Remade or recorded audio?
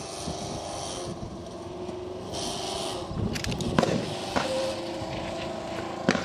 recorded